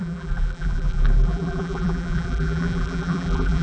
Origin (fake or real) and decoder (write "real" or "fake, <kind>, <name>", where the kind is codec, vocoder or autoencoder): fake, vocoder, BigVGAN v2